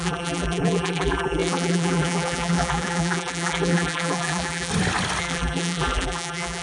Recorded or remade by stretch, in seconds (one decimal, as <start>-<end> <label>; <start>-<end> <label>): 0.0-4.7 remade; 4.7-5.2 recorded; 5.2-6.6 remade